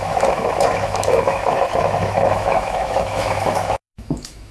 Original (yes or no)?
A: no